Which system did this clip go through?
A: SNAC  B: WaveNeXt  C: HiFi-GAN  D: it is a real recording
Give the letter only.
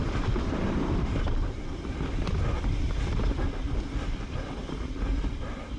D